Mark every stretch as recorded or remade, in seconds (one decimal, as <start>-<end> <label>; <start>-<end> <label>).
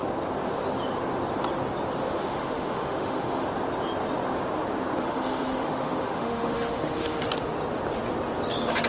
0.0-2.0 recorded; 2.0-3.5 remade; 3.5-5.0 recorded; 5.0-7.2 remade; 7.2-8.9 recorded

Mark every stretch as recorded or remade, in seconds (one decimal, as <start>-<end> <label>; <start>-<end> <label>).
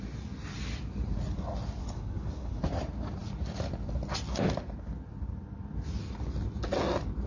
0.0-1.8 recorded; 1.8-2.6 remade; 2.6-7.3 recorded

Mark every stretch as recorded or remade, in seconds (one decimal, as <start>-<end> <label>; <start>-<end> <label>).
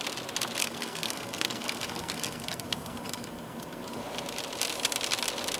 0.0-0.6 recorded; 0.6-4.0 remade; 4.0-5.6 recorded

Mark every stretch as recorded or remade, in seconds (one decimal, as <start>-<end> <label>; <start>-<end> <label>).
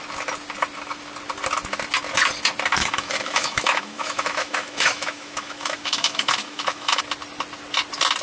0.0-2.8 recorded; 2.8-7.0 remade; 7.0-8.2 recorded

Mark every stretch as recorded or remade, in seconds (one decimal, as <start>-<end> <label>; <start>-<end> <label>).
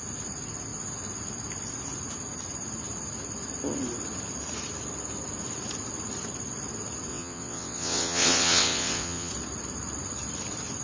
0.0-7.1 recorded; 7.1-9.3 remade; 9.3-10.8 recorded